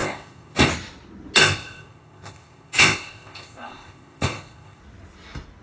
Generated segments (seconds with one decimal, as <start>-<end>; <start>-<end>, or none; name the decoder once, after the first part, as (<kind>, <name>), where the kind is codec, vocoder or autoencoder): 0.0-0.7 (codec, ZipCodec); 1.4-4.8